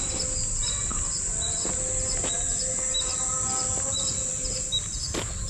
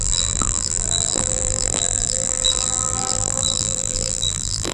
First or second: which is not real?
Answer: second